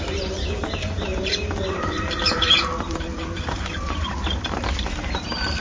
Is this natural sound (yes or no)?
no